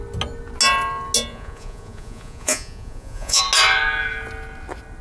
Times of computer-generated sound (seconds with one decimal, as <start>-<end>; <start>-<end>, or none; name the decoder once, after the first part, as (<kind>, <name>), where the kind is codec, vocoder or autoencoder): 1.3-3.4 (vocoder, Vocos)